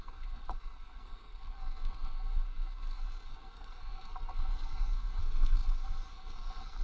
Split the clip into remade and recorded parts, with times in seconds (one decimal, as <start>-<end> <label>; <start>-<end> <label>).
0.0-6.8 remade